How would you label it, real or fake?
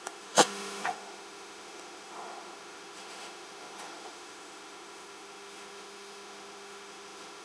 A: fake